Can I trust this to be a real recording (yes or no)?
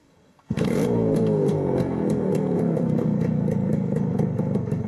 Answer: no